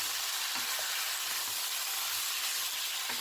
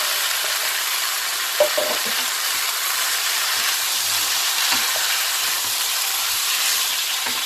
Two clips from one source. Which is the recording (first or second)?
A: first